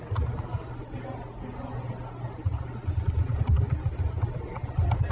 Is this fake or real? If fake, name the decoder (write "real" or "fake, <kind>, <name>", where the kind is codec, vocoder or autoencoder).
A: real